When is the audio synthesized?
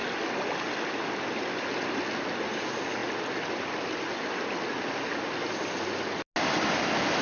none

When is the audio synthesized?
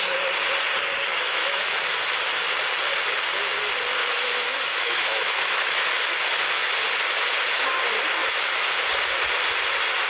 1.1-1.8; 4.0-5.9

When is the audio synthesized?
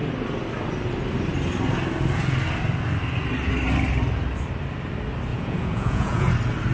5.3-6.3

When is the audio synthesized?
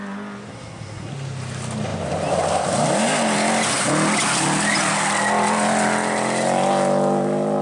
0.5-1.1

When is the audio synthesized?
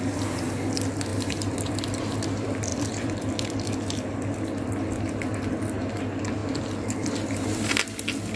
1.1-2.0; 2.7-3.9; 6.4-7.7